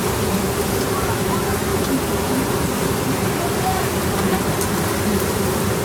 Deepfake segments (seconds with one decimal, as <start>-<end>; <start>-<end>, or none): none